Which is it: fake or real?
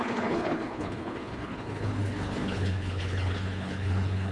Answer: fake